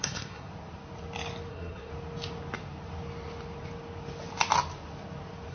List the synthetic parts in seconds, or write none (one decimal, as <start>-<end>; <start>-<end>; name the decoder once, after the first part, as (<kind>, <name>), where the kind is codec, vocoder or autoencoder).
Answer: 0.0-0.5 (codec, SNAC); 1.5-1.9